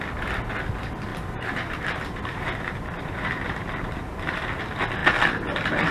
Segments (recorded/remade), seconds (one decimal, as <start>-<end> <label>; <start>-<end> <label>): 0.0-1.1 recorded; 1.1-4.6 remade; 4.6-5.9 recorded